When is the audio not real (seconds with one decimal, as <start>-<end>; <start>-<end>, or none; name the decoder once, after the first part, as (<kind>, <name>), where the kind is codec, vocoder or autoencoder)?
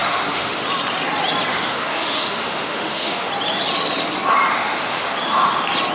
0.0-0.6 (autoencoder, DAC-VAE); 1.5-3.3; 4.5-5.1